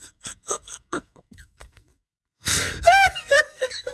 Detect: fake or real fake